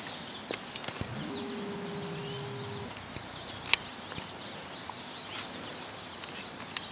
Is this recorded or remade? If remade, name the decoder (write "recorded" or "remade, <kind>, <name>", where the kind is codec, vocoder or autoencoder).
recorded